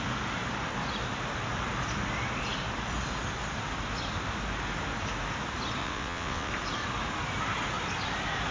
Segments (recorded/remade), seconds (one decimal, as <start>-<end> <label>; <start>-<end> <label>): 0.0-5.8 recorded; 5.8-6.5 remade; 6.5-8.5 recorded